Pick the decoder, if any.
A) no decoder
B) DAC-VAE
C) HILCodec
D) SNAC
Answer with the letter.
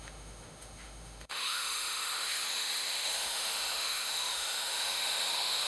B